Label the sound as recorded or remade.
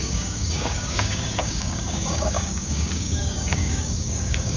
remade